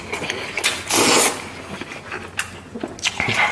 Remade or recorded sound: recorded